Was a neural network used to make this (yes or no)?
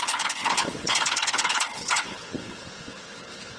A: yes